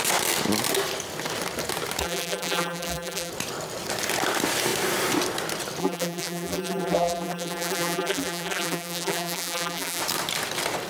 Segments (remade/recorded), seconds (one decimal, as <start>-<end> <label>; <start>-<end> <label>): 0.0-2.0 recorded; 2.0-3.3 remade; 3.3-5.8 recorded; 5.8-10.0 remade; 10.0-10.9 recorded